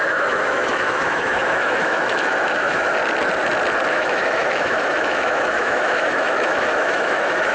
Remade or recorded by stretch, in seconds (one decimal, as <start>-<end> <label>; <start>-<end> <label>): 0.0-3.0 remade; 3.0-3.9 recorded; 3.9-7.5 remade